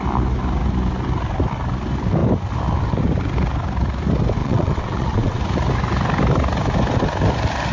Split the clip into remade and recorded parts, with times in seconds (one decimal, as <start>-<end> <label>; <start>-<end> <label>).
0.0-4.4 recorded; 4.4-5.4 remade; 5.4-7.7 recorded